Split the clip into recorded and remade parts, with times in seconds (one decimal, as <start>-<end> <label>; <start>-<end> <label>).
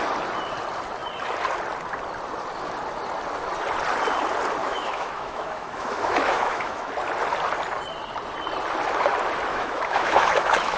0.0-4.6 recorded; 4.6-6.9 remade; 6.9-9.5 recorded; 9.5-10.8 remade